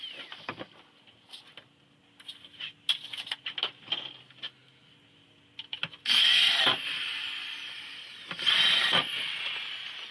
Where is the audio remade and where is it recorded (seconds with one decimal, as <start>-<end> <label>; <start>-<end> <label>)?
0.0-10.1 recorded